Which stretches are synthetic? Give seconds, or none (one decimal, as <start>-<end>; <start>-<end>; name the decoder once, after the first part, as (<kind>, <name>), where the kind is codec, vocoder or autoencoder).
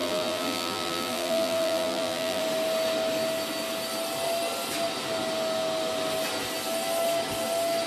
0.0-2.4 (vocoder, BigVGAN v2)